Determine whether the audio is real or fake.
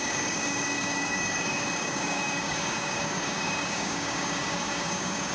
fake